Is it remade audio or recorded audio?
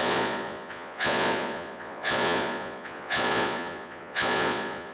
remade